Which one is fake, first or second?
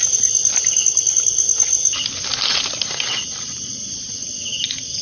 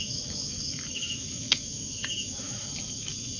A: second